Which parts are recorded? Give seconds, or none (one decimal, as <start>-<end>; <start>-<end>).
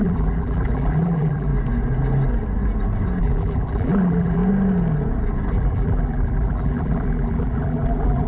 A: 1.5-3.2; 4.4-5.5